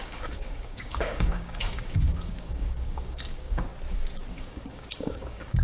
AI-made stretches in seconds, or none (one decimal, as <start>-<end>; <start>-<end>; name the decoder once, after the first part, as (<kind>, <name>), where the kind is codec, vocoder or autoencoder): 0.0-3.7 (codec, DAC); 4.3-5.6